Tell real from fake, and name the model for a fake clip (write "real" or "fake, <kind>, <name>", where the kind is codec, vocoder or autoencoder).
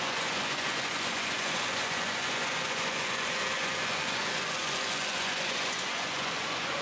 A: fake, vocoder, Vocos